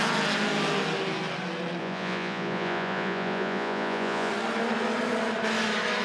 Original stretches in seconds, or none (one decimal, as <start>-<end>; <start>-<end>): 0.0-1.8; 4.3-6.0